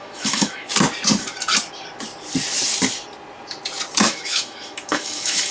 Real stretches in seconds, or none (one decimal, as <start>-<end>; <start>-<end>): 0.7-4.0